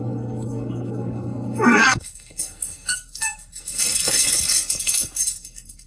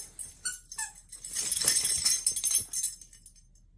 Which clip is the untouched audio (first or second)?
second